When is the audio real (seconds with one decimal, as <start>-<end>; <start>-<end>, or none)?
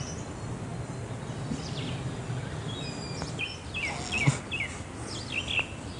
0.0-6.0